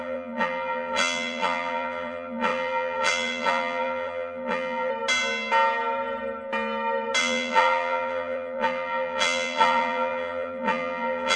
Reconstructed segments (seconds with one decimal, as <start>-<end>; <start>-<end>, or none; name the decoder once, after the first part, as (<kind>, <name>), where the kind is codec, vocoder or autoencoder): 0.0-4.9 (vocoder, BigVGAN v2); 7.2-11.4